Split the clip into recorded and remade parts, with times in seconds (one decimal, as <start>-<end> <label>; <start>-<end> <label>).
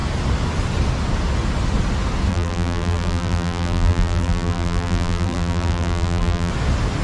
0.0-2.3 recorded; 2.3-6.5 remade; 6.5-7.0 recorded